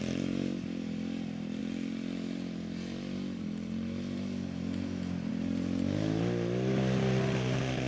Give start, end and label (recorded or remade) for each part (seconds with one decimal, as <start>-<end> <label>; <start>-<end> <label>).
0.0-7.9 recorded